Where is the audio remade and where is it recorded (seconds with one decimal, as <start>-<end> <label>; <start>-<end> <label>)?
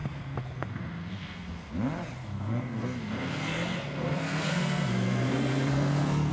0.0-1.7 remade; 1.7-2.2 recorded; 2.2-6.3 remade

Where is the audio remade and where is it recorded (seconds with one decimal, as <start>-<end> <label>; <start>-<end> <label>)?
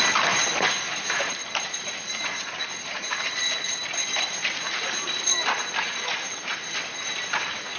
0.0-0.5 recorded; 0.5-3.3 remade; 3.3-7.8 recorded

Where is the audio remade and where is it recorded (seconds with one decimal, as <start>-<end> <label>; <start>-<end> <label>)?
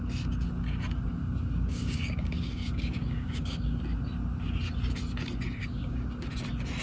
0.0-1.2 recorded; 1.2-3.8 remade; 3.8-5.6 recorded; 5.6-6.3 remade; 6.3-6.8 recorded